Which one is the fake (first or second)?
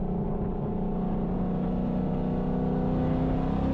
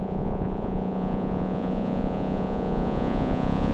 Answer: second